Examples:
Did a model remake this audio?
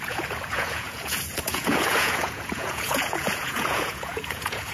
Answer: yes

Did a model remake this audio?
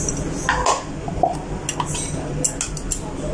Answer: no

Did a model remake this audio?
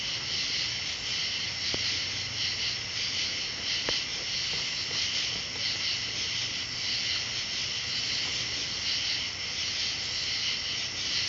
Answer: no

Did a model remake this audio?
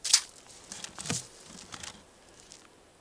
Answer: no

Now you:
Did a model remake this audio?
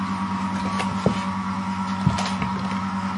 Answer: no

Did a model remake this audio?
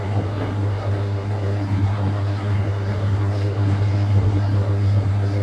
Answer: yes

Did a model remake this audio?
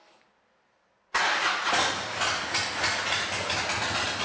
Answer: no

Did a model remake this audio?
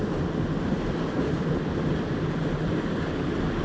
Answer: no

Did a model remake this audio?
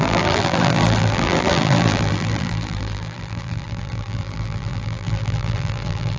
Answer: yes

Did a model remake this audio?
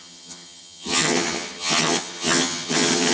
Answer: yes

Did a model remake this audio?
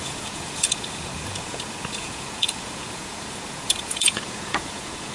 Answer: yes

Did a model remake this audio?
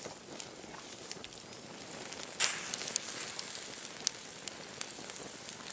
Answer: no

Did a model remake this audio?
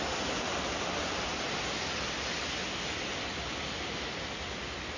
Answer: no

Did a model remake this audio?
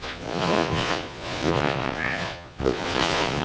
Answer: yes